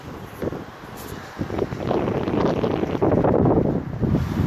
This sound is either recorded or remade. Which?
recorded